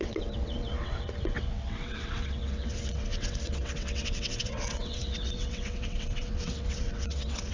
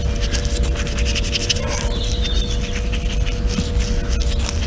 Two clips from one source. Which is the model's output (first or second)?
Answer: first